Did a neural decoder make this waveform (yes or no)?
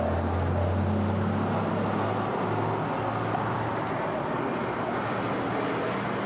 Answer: no